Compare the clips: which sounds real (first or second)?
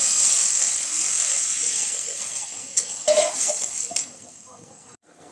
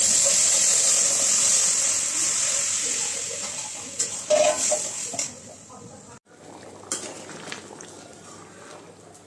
second